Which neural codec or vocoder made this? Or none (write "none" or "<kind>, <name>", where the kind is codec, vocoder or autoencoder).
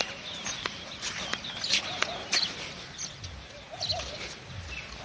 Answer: none